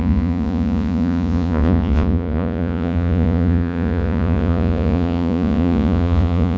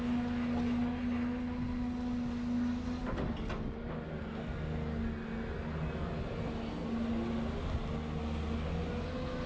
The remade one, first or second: first